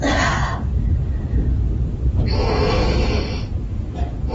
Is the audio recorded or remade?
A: recorded